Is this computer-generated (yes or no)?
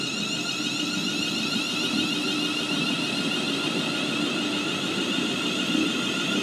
no